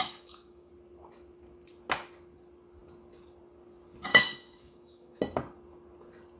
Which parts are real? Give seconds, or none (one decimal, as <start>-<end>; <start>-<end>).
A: 0.7-4.1; 5.2-6.4

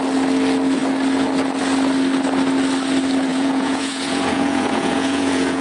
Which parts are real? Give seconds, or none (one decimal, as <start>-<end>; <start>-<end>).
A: 0.0-3.3

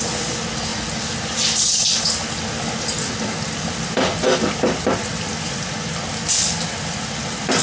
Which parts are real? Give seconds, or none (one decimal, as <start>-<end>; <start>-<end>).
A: 0.0-0.7; 3.1-7.6

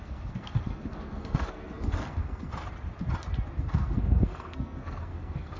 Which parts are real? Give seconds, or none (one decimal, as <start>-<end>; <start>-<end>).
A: 2.5-3.6